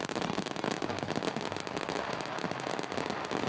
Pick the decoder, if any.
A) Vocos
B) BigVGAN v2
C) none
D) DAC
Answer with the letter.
C